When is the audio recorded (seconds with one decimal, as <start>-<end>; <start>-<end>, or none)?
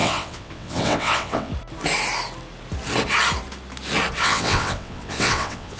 1.5-4.2